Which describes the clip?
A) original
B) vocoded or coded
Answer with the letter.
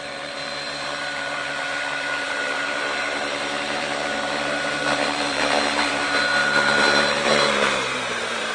B